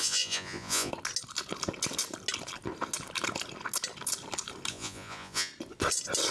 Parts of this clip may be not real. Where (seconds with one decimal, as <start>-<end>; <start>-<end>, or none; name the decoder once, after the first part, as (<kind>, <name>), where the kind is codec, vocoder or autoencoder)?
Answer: 0.0-0.9 (vocoder, Vocos); 4.7-5.5